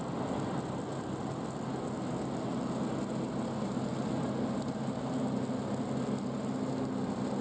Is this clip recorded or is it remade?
recorded